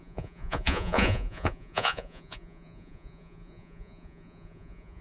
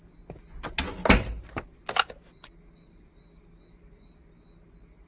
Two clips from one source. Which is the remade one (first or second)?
first